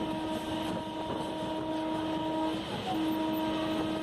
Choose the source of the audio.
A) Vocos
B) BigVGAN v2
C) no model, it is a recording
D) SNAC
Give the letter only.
C